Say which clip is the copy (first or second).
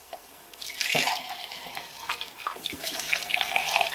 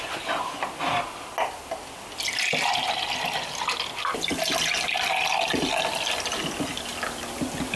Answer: first